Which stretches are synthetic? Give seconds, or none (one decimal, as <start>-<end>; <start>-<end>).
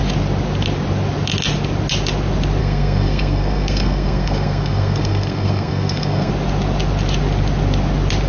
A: 2.6-6.3